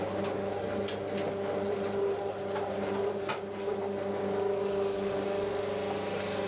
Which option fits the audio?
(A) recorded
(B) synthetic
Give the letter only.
A